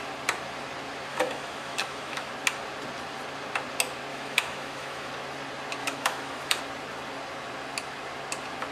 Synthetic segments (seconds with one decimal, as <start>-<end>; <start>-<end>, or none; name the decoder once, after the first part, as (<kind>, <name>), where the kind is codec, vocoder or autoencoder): 1.1-2.3 (autoencoder, DAC-VAE); 4.1-5.1; 5.8-6.6